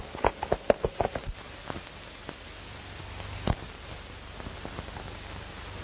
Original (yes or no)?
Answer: yes